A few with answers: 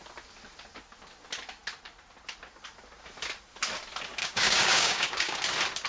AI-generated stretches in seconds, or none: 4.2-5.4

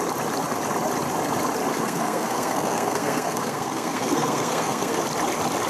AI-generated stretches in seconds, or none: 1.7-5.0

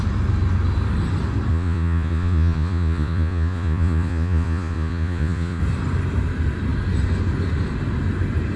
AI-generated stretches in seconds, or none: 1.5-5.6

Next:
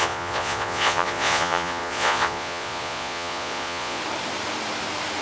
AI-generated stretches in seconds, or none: 0.0-4.0

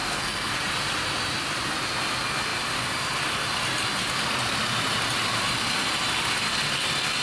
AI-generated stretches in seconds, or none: 0.0-0.6